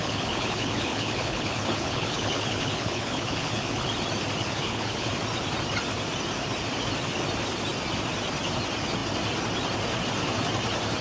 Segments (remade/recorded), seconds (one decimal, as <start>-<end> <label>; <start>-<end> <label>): 0.0-3.9 remade; 3.9-4.4 recorded; 4.4-5.1 remade; 5.1-11.0 recorded